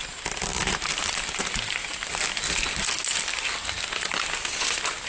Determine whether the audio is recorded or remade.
recorded